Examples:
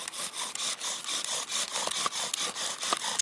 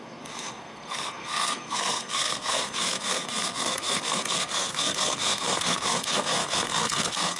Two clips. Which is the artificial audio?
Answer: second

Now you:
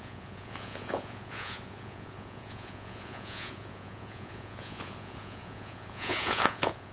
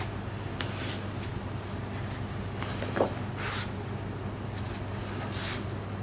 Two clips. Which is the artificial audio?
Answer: first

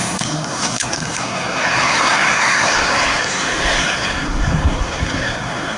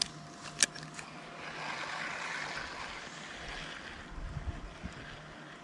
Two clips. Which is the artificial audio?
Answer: first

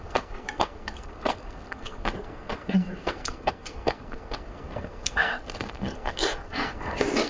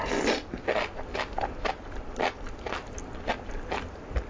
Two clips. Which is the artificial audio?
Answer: first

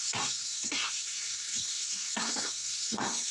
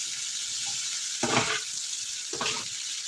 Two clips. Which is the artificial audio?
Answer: first